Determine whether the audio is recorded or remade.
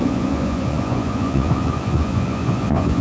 remade